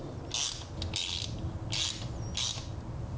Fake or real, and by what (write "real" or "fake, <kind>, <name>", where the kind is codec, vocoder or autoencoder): real